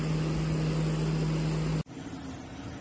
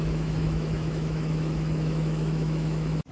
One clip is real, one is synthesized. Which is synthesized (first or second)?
second